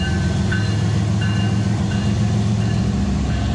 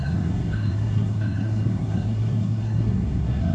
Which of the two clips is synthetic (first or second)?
second